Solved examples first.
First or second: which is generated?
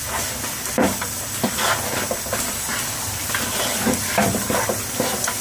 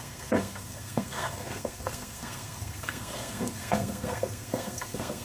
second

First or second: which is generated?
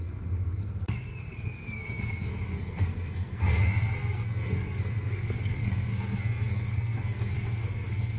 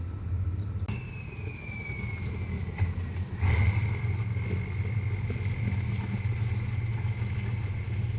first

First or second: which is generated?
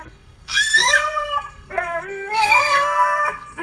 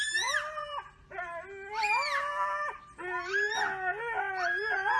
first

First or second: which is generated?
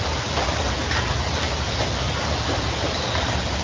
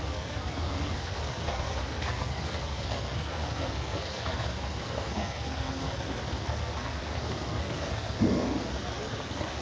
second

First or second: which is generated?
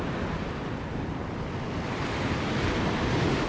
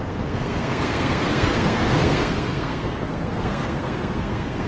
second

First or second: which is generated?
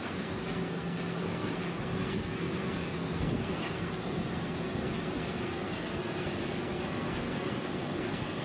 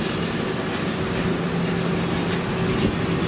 first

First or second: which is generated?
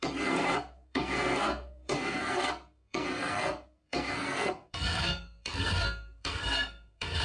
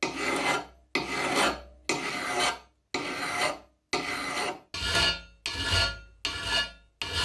first